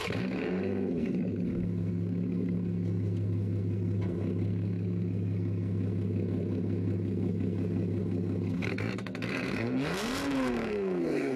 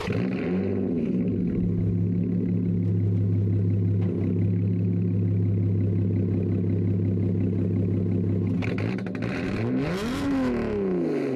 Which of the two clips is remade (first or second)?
first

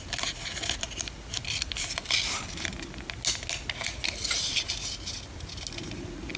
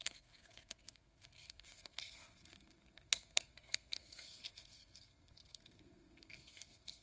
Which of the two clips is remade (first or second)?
second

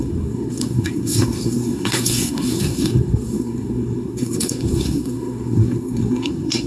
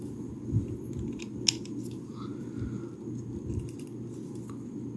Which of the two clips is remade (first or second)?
first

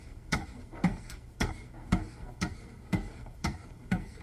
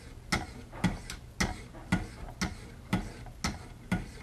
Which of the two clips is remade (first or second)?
first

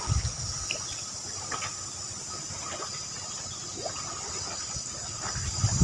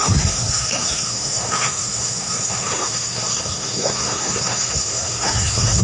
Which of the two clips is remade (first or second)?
second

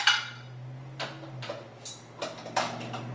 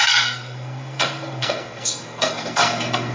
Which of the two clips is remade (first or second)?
second